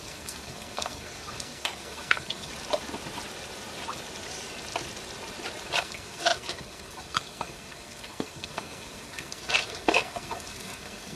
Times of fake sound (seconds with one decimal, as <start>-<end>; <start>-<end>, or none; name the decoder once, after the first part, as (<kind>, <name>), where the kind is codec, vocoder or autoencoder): 0.0-2.5 (codec, SNAC); 5.8-11.2